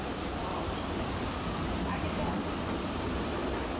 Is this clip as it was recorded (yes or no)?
no